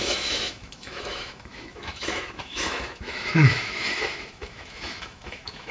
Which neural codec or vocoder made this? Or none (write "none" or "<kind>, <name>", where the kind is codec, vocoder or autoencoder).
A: autoencoder, DAC-VAE